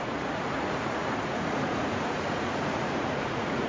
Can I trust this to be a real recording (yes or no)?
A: no